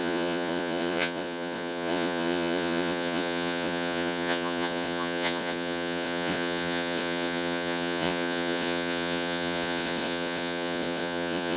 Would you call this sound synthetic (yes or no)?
yes